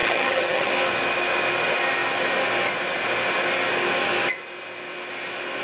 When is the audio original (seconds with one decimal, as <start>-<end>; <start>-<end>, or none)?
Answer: 0.7-5.6